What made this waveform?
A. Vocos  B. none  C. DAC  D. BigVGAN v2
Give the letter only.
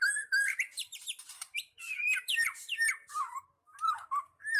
D